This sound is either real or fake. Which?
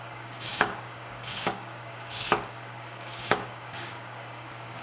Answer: fake